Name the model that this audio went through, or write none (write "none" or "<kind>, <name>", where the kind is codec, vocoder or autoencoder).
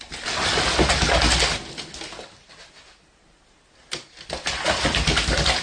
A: none